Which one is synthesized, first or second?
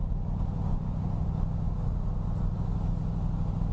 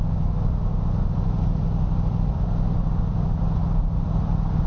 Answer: second